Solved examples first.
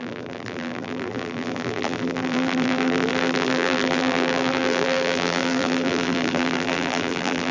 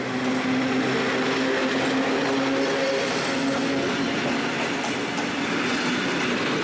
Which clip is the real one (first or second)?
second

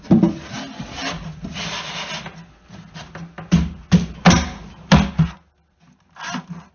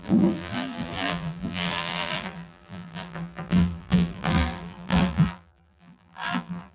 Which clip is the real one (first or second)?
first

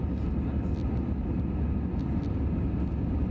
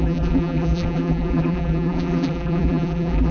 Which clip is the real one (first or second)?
first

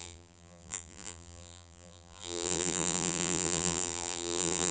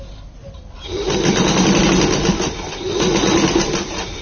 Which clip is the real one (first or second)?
second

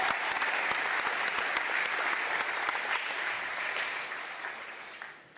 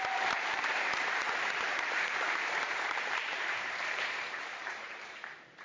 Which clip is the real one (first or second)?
first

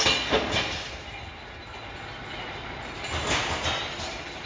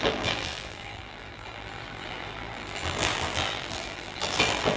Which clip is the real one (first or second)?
first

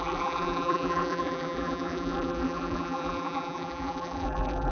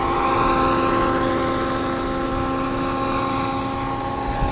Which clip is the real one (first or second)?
second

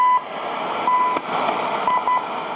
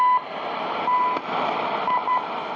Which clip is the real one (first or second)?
first